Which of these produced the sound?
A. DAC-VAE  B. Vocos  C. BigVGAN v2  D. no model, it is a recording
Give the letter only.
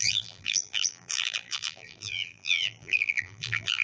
C